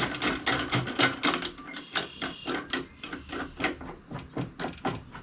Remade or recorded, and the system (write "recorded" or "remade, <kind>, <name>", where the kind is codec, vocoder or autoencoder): recorded